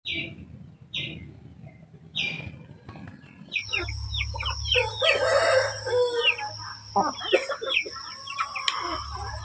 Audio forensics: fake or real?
real